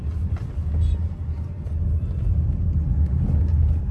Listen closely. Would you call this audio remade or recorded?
recorded